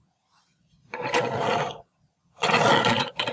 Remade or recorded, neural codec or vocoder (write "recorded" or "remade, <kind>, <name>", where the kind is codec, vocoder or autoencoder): remade, vocoder, Vocos